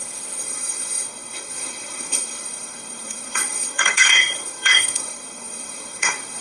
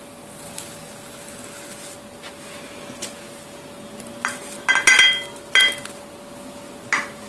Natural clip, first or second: second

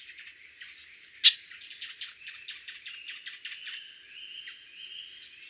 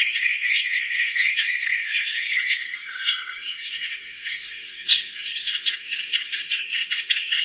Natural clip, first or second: first